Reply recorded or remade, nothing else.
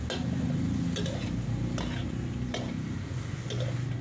recorded